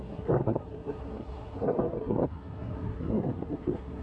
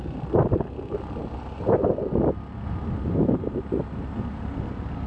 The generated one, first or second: first